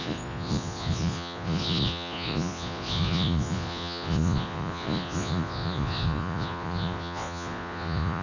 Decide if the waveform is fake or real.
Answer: fake